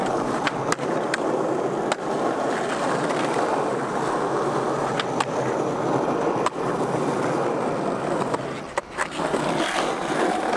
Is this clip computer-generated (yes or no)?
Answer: no